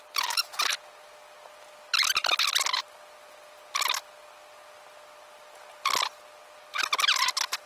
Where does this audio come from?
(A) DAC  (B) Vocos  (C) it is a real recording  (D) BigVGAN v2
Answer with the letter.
C